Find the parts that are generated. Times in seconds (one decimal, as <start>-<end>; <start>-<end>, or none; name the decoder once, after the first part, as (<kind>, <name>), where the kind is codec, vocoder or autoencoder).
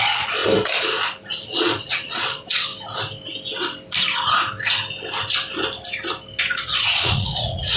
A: 0.0-0.4 (vocoder, Vocos); 1.3-2.7; 6.4-7.8